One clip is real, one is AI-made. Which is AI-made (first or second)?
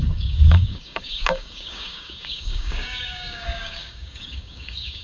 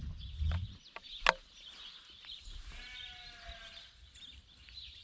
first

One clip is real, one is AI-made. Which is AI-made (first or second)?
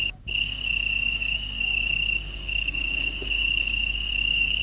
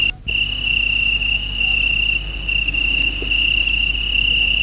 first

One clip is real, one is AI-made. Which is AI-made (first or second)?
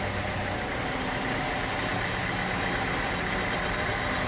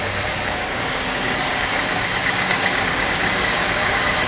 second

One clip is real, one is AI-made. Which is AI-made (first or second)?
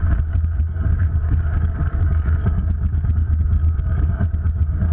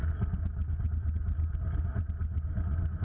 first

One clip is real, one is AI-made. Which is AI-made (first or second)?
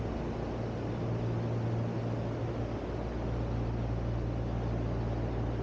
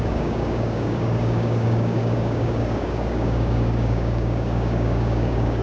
second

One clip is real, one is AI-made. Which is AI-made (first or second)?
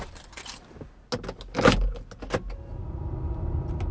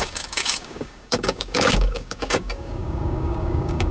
second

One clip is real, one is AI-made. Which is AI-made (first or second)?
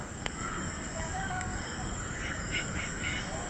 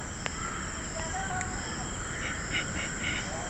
first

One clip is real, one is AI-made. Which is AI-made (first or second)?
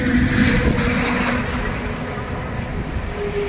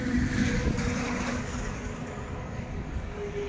second